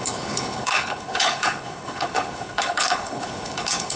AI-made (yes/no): yes